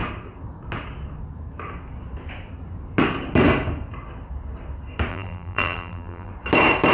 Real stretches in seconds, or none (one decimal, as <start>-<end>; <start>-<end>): 0.0-5.1; 6.3-6.9